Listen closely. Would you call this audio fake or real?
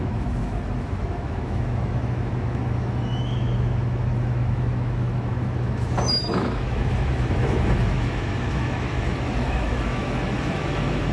fake